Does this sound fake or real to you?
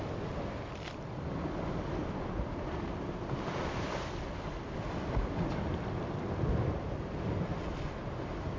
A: real